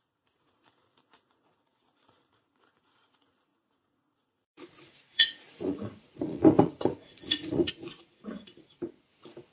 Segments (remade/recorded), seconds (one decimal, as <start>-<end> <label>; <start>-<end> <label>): 0.0-9.5 remade

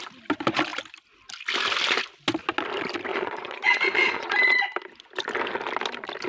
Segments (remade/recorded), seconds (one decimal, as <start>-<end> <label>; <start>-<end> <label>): 0.0-3.1 recorded; 3.1-4.6 remade; 4.6-6.3 recorded